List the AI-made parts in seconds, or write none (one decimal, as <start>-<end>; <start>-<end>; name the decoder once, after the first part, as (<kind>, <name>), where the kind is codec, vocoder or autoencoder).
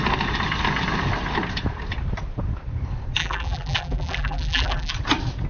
3.2-4.9 (vocoder, BigVGAN v2)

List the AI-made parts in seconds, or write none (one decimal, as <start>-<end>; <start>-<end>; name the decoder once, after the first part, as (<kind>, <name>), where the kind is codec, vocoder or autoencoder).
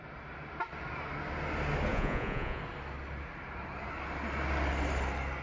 1.9-2.6 (vocoder, Vocos)